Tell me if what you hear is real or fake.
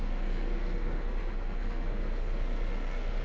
fake